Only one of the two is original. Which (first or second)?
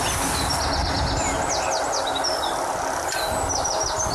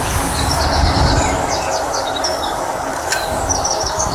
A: first